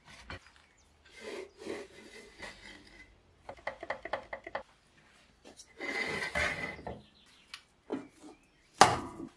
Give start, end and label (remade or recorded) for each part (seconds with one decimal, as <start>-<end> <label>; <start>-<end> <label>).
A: 0.0-9.4 recorded